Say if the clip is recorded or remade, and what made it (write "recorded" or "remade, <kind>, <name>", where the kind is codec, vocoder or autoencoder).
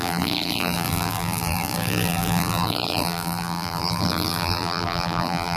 remade, vocoder, BigVGAN v2